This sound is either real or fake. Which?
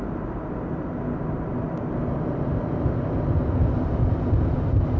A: real